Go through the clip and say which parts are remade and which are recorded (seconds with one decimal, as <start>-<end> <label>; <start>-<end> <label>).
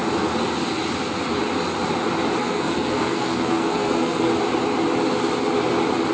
0.0-2.4 recorded; 2.4-4.3 remade; 4.3-6.1 recorded